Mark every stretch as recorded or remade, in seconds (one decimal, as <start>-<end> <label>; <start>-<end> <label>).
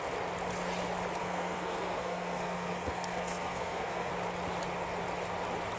0.0-1.2 recorded; 1.2-4.1 remade; 4.1-5.8 recorded